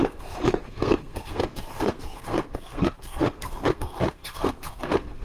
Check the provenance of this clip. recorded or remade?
remade